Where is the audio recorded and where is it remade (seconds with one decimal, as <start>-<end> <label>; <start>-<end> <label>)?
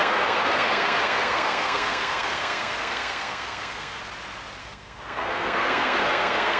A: 0.0-4.0 remade; 4.0-4.6 recorded; 4.6-6.6 remade